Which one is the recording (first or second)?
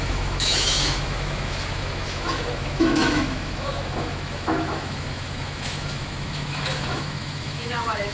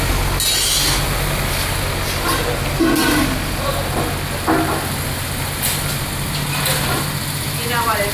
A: second